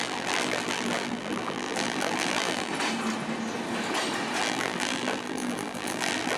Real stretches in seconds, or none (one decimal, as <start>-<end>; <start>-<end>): 2.7-4.4